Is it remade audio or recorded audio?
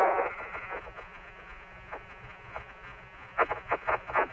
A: remade